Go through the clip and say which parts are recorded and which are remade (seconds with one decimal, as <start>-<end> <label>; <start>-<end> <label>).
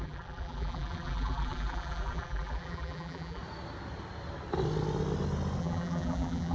0.0-3.4 remade; 3.4-5.6 recorded; 5.6-6.5 remade